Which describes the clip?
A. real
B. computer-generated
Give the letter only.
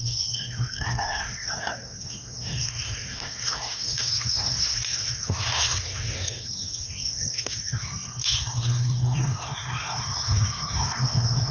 B